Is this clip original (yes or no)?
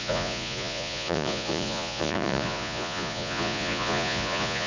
no